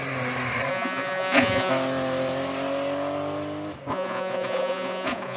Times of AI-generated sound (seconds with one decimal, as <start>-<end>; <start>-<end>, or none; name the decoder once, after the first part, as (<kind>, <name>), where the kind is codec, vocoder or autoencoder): 0.7-1.7 (vocoder, Vocos); 3.9-5.4